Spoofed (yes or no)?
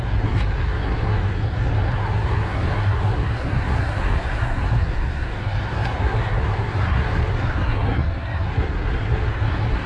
yes